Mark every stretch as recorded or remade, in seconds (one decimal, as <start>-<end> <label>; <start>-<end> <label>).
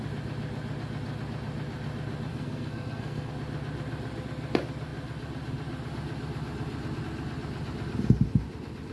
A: 0.0-2.3 recorded; 2.3-3.3 remade; 3.3-8.9 recorded